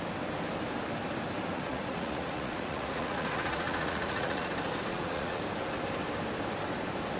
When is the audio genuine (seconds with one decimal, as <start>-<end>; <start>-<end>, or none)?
0.0-1.5; 4.5-4.9; 5.4-7.2